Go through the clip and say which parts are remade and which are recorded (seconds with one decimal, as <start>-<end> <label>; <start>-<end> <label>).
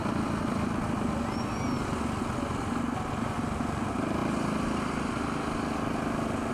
0.0-6.5 recorded